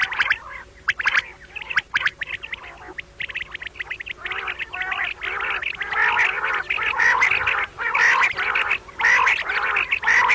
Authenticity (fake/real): real